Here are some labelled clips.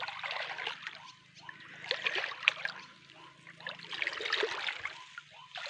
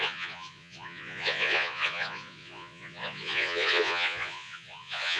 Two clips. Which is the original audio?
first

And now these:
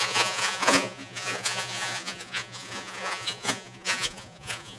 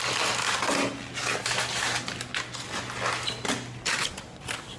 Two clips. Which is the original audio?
second